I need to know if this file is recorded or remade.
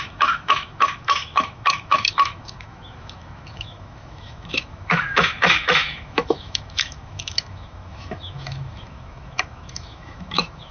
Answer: remade